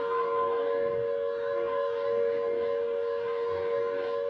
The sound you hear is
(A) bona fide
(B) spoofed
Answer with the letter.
B